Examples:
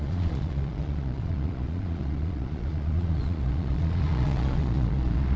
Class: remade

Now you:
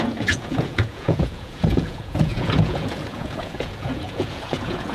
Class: remade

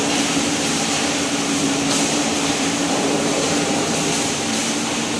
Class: remade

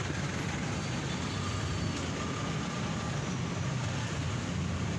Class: recorded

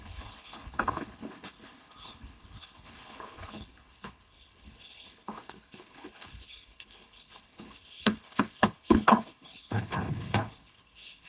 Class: remade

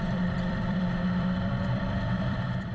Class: remade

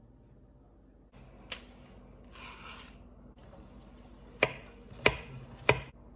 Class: recorded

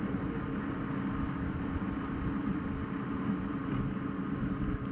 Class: recorded